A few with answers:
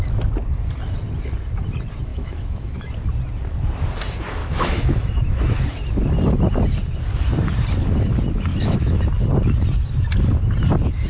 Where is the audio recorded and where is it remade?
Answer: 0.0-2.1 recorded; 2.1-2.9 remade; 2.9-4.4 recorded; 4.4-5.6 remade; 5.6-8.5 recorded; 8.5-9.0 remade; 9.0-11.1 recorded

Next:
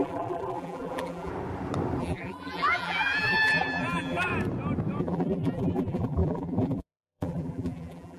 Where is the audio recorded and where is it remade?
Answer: 0.0-1.3 remade; 1.3-2.0 recorded; 2.0-4.3 remade; 4.3-5.0 recorded; 5.0-8.2 remade

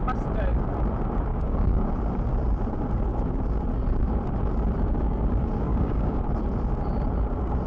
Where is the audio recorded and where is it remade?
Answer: 0.0-1.3 recorded; 1.3-1.9 remade; 1.9-5.7 recorded; 5.7-6.2 remade; 6.2-7.7 recorded

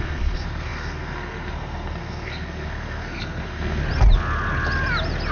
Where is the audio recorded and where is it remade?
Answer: 0.0-3.8 remade; 3.8-5.3 recorded

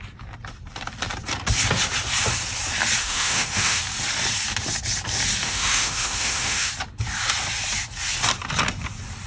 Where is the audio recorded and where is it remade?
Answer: 0.0-3.0 recorded; 3.0-3.8 remade; 3.8-5.4 recorded; 5.4-6.7 remade; 6.7-9.3 recorded

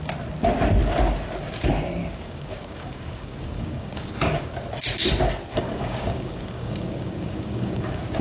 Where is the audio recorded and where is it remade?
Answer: 0.0-2.0 recorded; 2.0-4.4 remade; 4.4-5.5 recorded; 5.5-8.2 remade

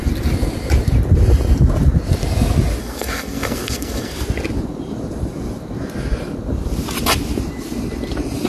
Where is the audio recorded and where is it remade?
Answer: 0.0-2.8 recorded; 2.8-4.1 remade; 4.1-8.5 recorded

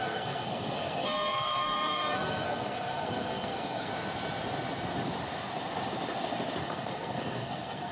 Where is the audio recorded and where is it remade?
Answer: 0.0-3.9 remade; 3.9-6.6 recorded; 6.6-7.9 remade